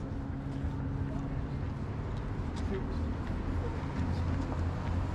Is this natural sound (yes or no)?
yes